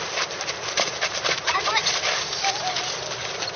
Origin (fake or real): real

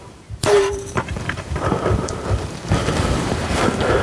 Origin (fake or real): fake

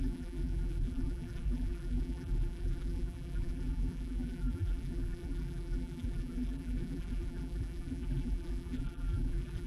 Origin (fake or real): fake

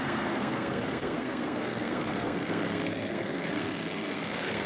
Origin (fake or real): fake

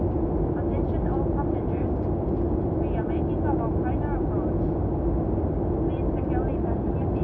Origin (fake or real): real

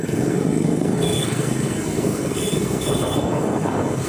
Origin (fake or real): fake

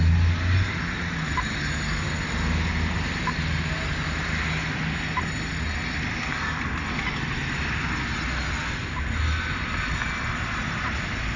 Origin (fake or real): real